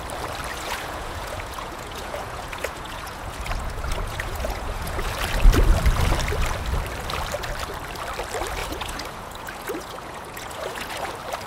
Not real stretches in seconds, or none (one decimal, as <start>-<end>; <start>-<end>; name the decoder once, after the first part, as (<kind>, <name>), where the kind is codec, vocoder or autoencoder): 0.5-5.1 (vocoder, Vocos); 8.6-11.1